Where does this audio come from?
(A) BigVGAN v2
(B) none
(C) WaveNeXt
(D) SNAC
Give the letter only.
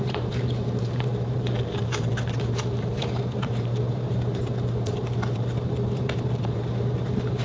A